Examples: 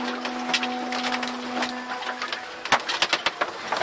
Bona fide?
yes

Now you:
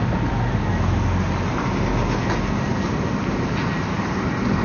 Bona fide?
yes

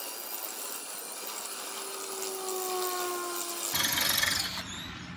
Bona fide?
yes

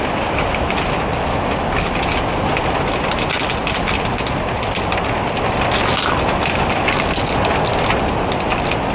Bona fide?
yes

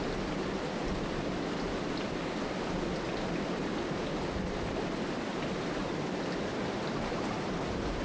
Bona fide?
yes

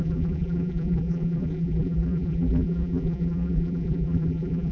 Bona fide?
no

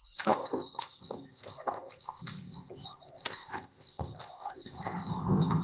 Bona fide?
no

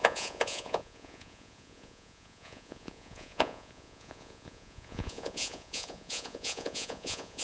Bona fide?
no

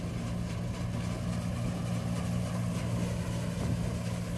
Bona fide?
yes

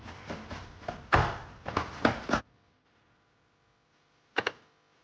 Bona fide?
yes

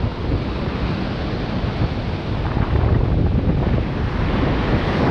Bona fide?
yes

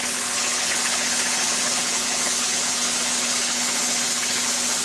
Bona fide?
no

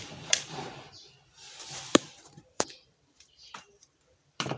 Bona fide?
no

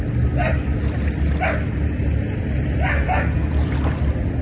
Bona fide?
yes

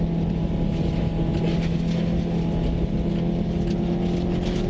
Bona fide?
yes